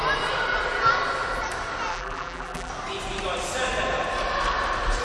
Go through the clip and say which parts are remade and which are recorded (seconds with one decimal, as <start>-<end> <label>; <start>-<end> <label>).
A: 0.0-1.9 recorded; 1.9-2.7 remade; 2.7-5.0 recorded